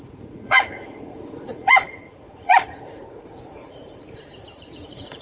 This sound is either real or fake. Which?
fake